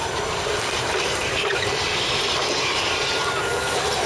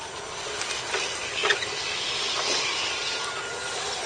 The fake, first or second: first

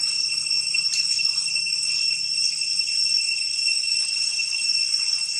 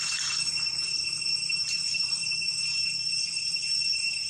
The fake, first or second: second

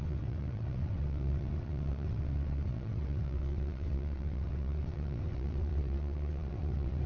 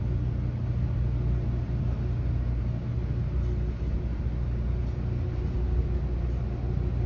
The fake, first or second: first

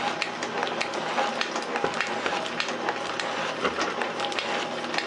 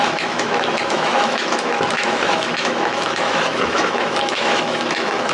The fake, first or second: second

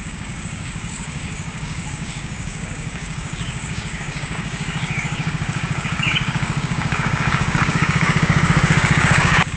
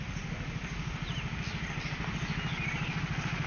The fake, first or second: first